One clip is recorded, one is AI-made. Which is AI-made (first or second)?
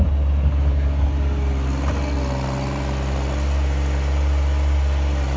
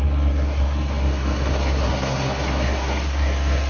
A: second